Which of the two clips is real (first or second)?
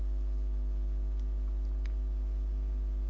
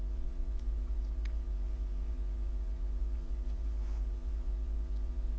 first